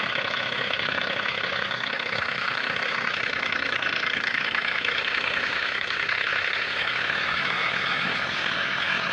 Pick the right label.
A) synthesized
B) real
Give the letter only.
A